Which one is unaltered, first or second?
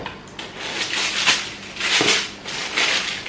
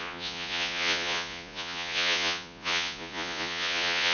first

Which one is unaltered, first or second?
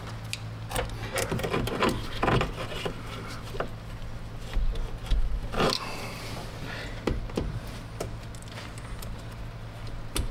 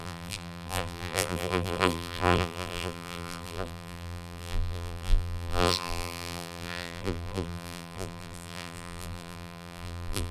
first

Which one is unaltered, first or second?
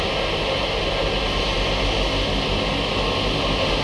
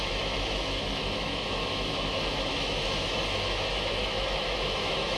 first